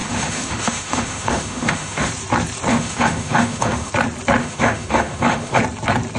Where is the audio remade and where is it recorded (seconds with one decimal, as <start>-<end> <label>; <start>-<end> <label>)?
0.0-2.1 remade; 2.1-2.7 recorded; 2.7-3.9 remade; 3.9-4.4 recorded; 4.4-5.6 remade; 5.6-6.2 recorded